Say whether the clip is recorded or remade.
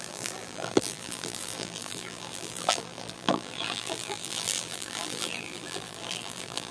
remade